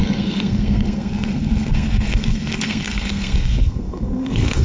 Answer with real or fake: fake